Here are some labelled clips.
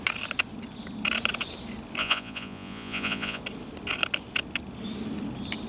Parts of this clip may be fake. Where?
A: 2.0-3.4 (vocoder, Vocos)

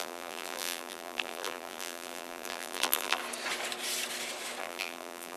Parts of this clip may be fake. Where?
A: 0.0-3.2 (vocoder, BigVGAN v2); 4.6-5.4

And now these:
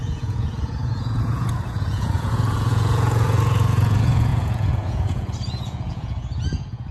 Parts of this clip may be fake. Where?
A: 0.0-6.9 (vocoder, Vocos)

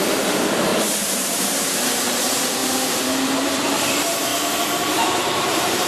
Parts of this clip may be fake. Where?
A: 0.0-4.3 (vocoder, BigVGAN v2); 4.9-5.9

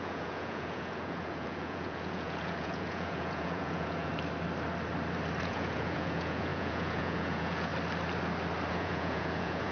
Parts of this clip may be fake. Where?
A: 0.0-4.1 (vocoder, Vocos); 5.4-7.7; 8.7-9.7